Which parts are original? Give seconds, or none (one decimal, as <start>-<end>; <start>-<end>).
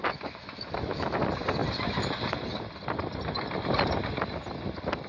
1.2-5.1